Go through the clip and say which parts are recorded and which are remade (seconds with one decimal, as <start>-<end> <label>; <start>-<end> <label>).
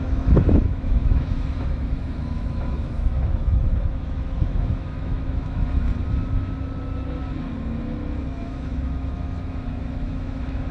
0.0-5.9 remade; 5.9-8.4 recorded; 8.4-10.7 remade